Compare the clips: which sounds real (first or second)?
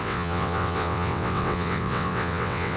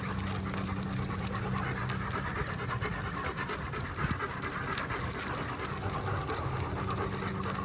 second